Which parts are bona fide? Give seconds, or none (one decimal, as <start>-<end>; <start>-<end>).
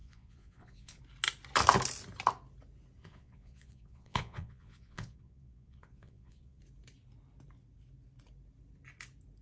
1.0-3.0; 6.6-9.4